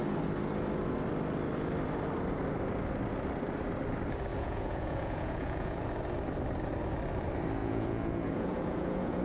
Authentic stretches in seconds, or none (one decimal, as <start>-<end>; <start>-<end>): 0.0-4.3; 5.9-7.6